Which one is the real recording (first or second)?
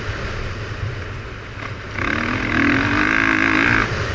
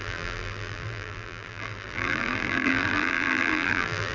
first